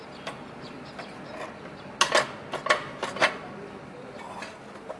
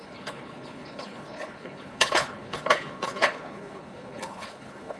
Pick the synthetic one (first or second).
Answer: second